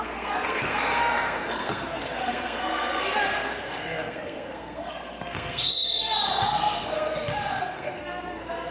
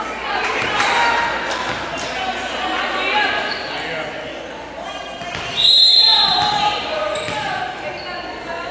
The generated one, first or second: first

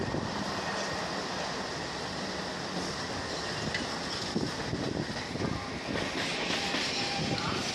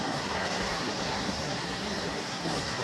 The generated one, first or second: second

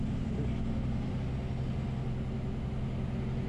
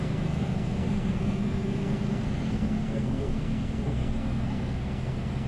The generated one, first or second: second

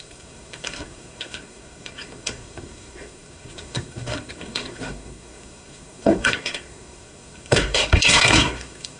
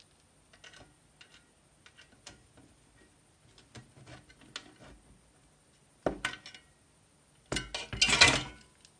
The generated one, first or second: first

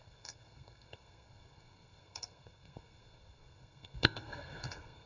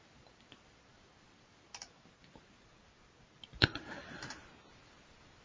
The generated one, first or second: first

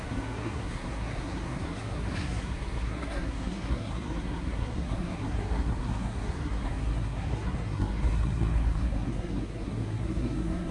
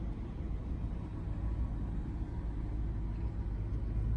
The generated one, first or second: first